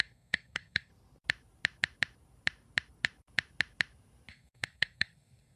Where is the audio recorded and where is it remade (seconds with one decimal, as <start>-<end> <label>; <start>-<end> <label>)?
0.0-0.9 remade; 0.9-4.3 recorded; 4.3-5.6 remade